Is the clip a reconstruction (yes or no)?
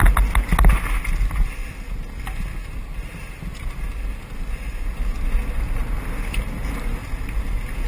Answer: no